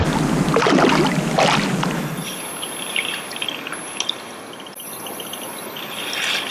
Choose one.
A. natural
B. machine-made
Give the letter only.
A